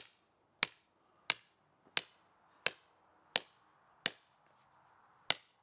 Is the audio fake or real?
real